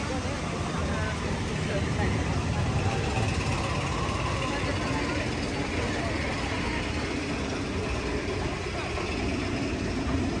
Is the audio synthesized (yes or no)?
no